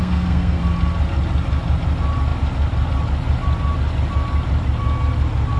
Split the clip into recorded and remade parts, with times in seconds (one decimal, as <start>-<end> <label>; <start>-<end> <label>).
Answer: 0.0-0.6 remade; 0.6-5.6 recorded